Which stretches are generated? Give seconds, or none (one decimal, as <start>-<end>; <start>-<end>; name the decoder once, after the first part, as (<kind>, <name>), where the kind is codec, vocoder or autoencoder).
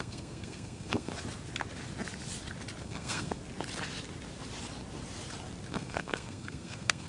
0.0-1.1 (codec, SNAC); 2.8-3.4; 5.7-7.1